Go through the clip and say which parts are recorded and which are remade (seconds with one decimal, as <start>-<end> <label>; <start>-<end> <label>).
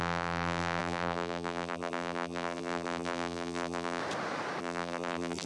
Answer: 0.0-4.0 remade; 4.0-4.6 recorded; 4.6-5.5 remade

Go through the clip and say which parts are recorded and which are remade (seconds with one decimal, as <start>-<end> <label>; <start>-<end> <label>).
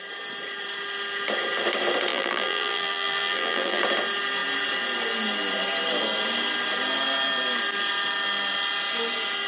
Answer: 0.0-2.1 recorded; 2.1-3.8 remade; 3.8-9.5 recorded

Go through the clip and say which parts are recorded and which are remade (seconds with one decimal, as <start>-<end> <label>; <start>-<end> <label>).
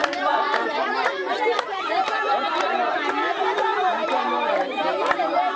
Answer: 0.0-5.6 recorded